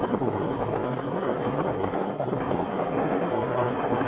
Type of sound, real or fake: fake